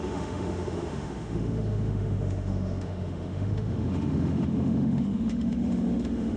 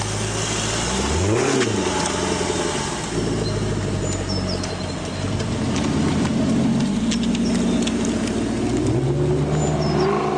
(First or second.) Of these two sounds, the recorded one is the second